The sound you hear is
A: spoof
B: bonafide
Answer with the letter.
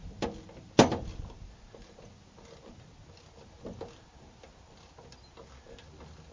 B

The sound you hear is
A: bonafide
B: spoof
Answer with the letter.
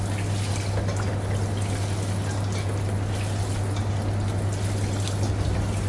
A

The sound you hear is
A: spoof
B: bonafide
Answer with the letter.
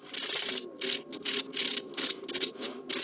B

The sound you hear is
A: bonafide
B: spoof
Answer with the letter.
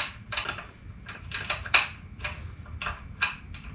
B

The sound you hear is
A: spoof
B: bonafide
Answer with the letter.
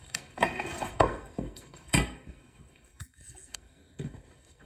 A